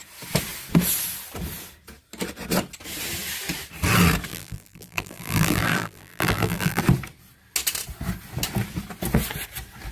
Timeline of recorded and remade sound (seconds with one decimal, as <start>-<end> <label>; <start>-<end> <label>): 0.0-4.3 recorded; 4.3-6.8 remade; 6.8-9.9 recorded